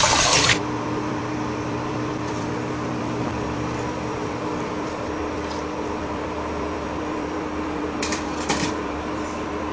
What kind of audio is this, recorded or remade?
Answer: remade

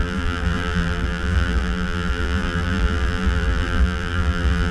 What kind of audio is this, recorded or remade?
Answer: remade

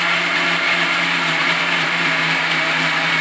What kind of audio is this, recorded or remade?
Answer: remade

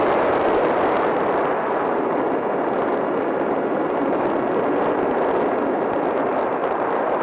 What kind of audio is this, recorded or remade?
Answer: remade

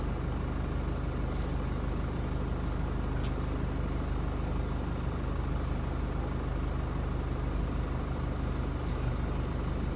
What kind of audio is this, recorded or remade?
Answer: recorded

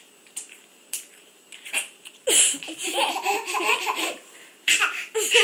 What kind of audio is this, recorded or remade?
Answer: remade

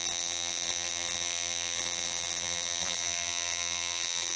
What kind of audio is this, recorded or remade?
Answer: remade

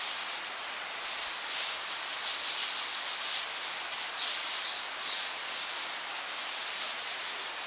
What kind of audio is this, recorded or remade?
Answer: remade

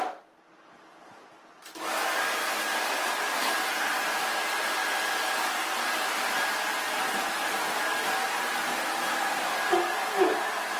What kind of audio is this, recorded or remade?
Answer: recorded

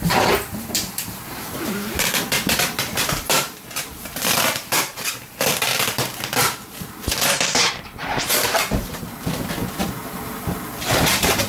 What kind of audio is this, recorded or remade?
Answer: remade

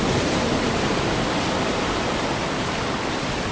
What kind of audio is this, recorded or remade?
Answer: recorded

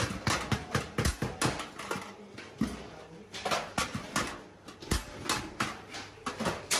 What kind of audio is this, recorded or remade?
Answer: recorded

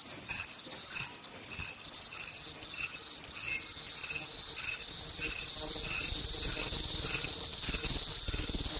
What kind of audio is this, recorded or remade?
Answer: recorded